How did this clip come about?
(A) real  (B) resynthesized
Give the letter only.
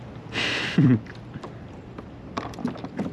B